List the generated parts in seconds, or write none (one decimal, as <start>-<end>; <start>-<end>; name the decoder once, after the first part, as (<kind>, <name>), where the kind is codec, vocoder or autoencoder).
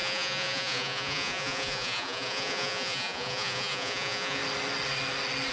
0.0-4.4 (vocoder, Vocos)